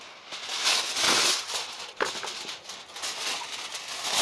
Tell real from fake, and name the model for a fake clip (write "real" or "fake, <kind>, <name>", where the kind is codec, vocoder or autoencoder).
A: real